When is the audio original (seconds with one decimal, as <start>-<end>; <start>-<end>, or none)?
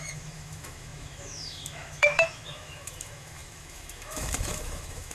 none